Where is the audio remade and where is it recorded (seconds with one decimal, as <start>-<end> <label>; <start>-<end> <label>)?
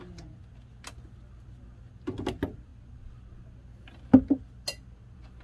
0.0-5.4 recorded